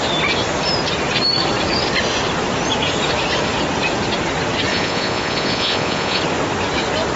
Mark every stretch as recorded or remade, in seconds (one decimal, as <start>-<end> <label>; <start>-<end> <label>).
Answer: 0.0-4.7 recorded; 4.7-6.2 remade; 6.2-7.2 recorded